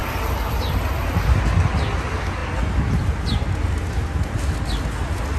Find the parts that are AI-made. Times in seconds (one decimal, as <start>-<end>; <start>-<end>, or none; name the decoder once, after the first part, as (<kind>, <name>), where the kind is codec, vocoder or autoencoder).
none